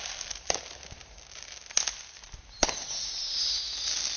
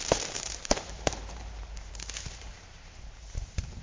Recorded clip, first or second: first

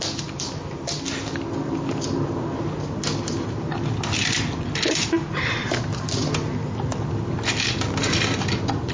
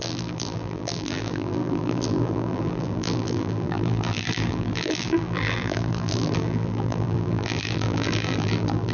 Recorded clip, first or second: first